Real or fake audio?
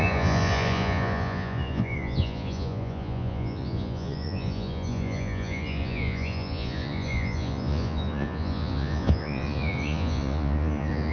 fake